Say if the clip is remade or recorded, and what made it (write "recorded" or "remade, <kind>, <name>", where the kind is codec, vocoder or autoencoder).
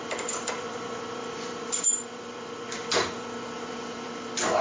remade, vocoder, BigVGAN v2